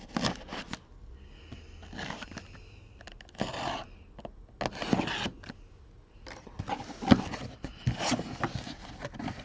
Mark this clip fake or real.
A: real